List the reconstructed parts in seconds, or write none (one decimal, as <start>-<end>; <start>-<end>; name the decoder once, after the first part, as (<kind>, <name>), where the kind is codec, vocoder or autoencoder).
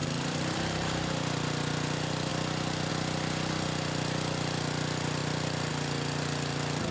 0.0-1.1 (vocoder, BigVGAN v2)